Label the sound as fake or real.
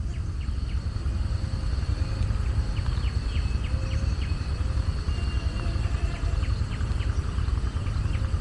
real